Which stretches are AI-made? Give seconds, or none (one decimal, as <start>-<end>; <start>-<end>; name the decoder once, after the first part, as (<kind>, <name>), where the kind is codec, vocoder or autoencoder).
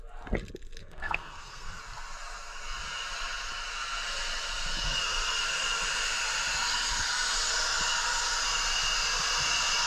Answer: 0.8-1.8 (codec, SNAC)